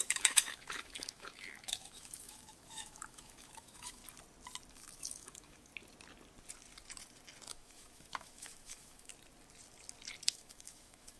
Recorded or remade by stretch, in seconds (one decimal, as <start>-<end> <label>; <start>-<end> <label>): 0.0-4.0 remade; 4.0-4.7 recorded; 4.7-5.7 remade; 5.7-7.5 recorded; 7.5-9.1 remade; 9.1-10.3 recorded; 10.3-11.2 remade